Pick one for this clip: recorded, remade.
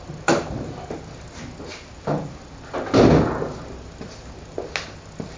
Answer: recorded